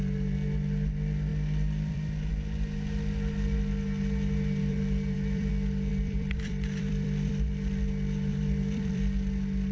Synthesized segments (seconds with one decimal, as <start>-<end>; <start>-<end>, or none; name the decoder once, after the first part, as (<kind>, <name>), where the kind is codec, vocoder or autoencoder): 1.3-2.3 (vocoder, BigVGAN v2); 4.6-5.5; 5.9-7.3; 8.3-9.0